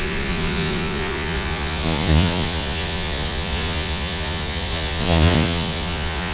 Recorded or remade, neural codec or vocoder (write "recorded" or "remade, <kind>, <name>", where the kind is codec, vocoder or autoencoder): remade, vocoder, Vocos